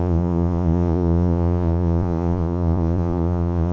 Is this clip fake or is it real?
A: fake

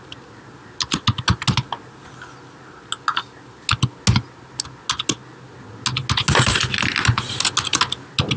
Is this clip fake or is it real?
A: real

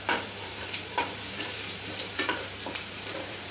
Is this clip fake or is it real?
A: fake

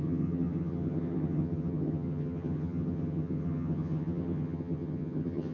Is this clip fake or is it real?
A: fake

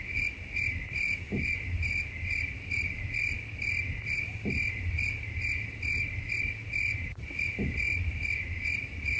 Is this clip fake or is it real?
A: real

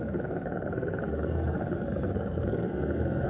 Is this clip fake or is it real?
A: fake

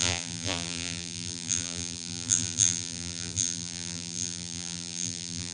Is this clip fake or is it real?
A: fake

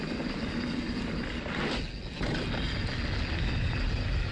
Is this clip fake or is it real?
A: real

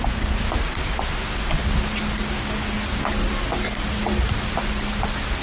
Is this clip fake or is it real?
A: real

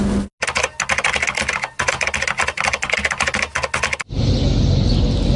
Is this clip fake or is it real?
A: real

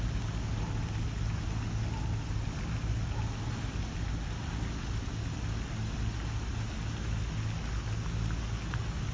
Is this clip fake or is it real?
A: real